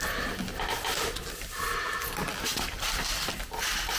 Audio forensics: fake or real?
real